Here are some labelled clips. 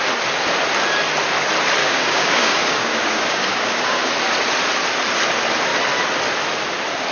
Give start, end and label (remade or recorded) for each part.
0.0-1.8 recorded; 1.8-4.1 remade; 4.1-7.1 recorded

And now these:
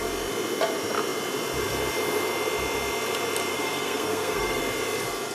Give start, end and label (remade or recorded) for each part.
0.0-3.5 recorded; 3.5-4.6 remade; 4.6-5.3 recorded

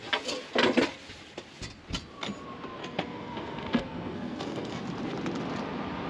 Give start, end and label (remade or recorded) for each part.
0.0-2.8 recorded; 2.8-4.8 remade; 4.8-6.1 recorded

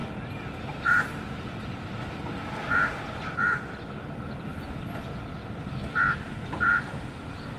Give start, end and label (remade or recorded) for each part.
0.0-5.4 recorded; 5.4-7.6 remade